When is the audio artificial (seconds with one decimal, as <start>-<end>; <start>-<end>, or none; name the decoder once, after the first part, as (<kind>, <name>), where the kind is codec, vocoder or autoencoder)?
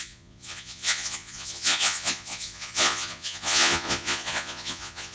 0.0-5.1 (vocoder, Vocos)